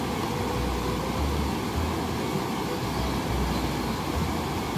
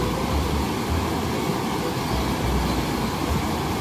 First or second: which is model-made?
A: second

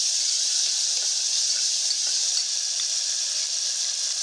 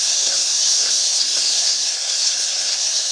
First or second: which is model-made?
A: second